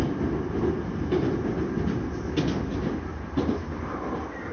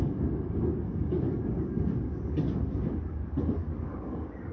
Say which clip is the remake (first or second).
second